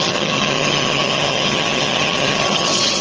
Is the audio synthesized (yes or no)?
yes